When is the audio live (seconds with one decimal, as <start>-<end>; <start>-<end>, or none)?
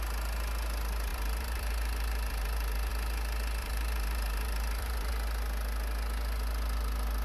0.0-1.1; 2.9-3.6; 5.1-7.2